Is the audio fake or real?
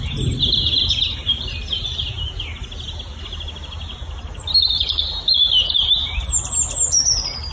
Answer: real